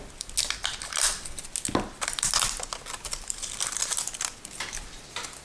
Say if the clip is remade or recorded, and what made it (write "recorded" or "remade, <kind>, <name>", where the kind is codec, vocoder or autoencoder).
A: recorded